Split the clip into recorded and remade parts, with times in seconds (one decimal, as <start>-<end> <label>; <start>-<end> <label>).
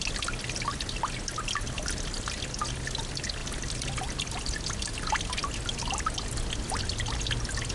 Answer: 0.0-7.7 recorded